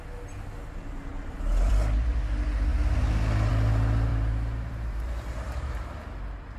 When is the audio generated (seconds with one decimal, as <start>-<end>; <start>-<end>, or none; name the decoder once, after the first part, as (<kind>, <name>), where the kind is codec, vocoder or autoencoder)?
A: 1.1-1.7 (vocoder, BigVGAN v2); 4.1-5.7